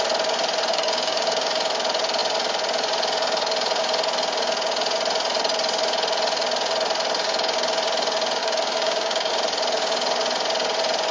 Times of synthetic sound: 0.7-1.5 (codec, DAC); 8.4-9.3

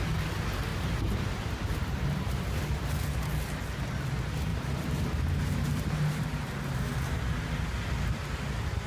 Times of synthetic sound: 0.7-2.9 (vocoder, BigVGAN v2); 4.5-6.3